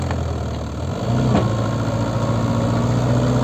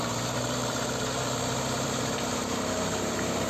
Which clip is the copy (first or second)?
second